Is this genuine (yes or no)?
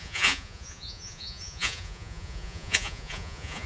no